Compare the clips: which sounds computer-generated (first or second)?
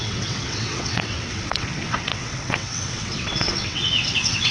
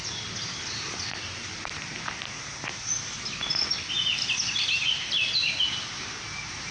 first